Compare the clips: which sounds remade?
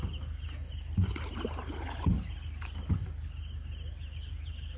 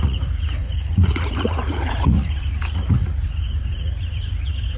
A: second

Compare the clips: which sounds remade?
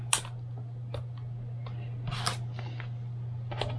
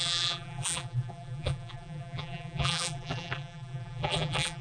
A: second